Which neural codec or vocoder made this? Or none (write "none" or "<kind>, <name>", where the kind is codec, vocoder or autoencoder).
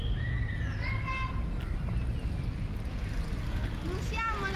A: none